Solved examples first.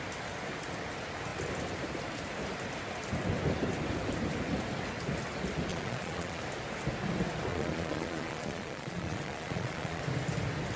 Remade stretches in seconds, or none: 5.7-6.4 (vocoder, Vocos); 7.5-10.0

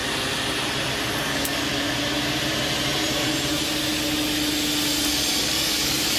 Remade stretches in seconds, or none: 1.2-1.7 (codec, DAC); 5.4-6.2

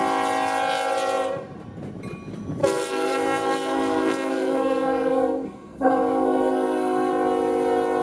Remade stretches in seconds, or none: 2.6-7.1 (codec, SNAC)

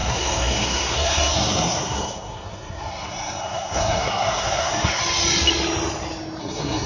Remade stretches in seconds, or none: 0.0-5.0 (codec, SNAC); 6.4-6.9

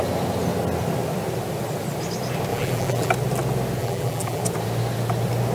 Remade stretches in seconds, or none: 2.5-3.1 (vocoder, BigVGAN v2); 3.8-4.4

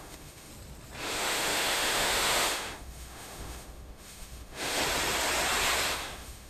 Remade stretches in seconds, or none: 0.0-0.5 (autoencoder, DAC-VAE); 1.0-4.8; 5.9-6.5